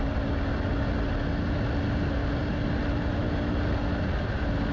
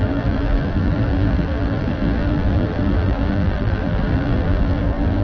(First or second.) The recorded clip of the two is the first